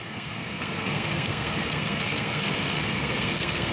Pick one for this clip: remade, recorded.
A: remade